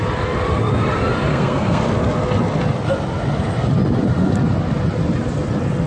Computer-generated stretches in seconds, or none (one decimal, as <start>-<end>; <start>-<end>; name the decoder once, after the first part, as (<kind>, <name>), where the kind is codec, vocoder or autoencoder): 1.3-1.8 (codec, SNAC)